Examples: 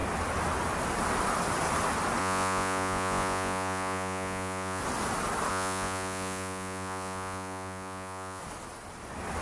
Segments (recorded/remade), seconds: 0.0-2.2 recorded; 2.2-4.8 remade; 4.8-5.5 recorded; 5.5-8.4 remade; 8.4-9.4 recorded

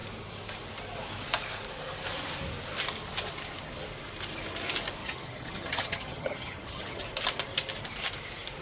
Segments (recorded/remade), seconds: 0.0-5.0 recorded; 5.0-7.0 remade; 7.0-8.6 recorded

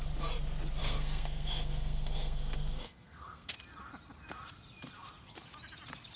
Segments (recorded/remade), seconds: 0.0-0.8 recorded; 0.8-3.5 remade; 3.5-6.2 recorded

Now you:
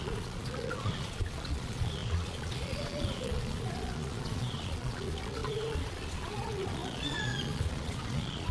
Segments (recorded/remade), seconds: 0.0-8.5 remade